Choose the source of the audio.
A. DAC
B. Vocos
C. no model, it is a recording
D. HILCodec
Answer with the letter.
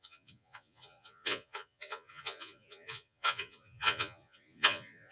B